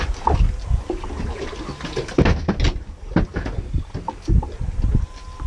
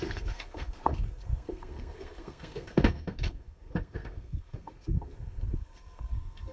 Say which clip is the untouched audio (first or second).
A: first